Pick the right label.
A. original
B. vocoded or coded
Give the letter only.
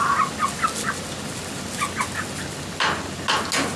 A